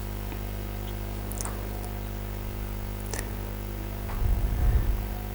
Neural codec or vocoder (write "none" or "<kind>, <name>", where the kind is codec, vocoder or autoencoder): none